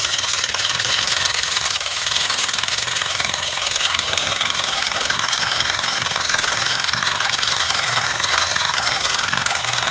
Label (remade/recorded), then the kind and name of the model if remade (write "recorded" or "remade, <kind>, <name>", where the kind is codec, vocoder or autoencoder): remade, codec, SNAC